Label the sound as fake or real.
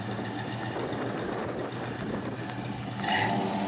real